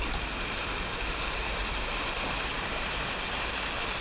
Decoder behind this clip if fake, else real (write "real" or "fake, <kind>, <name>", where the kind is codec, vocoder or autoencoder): real